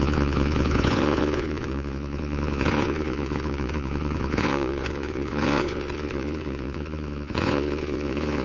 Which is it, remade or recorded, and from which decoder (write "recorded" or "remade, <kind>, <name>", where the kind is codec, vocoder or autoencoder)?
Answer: remade, vocoder, Vocos